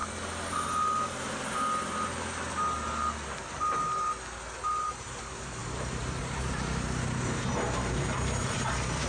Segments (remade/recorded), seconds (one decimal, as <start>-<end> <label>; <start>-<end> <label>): 0.0-4.9 recorded; 4.9-9.1 remade